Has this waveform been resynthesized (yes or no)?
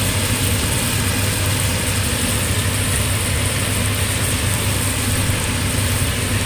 no